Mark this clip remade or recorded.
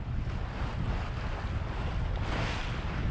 recorded